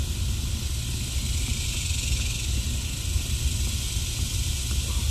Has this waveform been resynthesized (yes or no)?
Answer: no